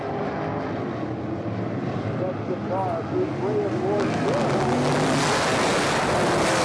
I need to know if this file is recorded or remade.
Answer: recorded